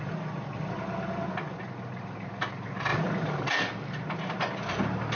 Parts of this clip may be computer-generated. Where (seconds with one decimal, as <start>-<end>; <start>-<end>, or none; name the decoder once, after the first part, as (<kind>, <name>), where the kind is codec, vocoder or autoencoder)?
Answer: none